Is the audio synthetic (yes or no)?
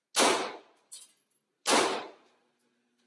no